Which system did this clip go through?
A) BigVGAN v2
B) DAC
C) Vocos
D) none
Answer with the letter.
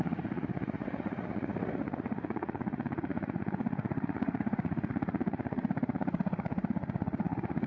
C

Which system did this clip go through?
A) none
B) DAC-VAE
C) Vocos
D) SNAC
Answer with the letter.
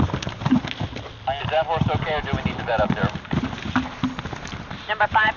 A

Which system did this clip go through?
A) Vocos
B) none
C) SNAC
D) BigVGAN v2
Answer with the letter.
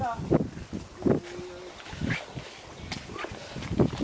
B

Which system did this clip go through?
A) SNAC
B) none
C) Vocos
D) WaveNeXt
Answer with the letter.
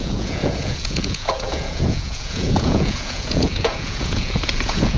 C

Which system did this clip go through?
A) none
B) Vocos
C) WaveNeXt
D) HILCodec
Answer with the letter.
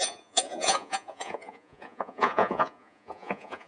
B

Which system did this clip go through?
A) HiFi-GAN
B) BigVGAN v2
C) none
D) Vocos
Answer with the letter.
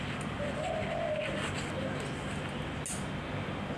C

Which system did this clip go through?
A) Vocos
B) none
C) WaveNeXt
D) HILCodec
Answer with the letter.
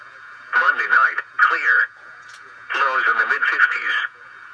A